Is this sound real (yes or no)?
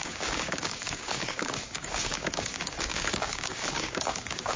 no